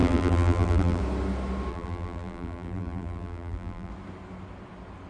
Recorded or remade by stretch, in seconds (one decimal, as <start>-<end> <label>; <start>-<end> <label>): 0.0-1.0 remade; 1.0-1.7 recorded; 1.7-3.9 remade; 3.9-5.1 recorded